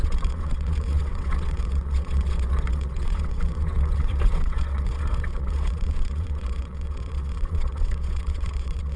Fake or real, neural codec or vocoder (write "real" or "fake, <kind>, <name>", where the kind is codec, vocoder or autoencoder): fake, vocoder, WaveNeXt